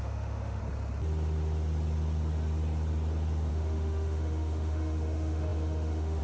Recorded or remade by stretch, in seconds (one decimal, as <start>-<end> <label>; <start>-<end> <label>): 0.0-0.6 remade; 0.6-3.5 recorded; 3.5-6.2 remade